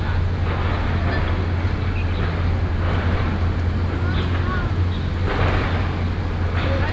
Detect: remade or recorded recorded